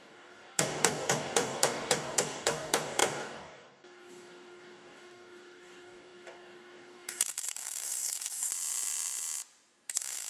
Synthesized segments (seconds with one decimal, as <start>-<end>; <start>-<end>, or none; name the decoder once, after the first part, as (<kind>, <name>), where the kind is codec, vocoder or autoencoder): 0.0-8.5 (codec, DAC); 9.9-10.3